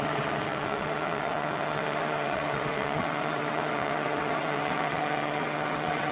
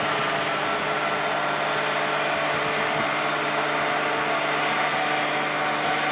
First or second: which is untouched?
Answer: second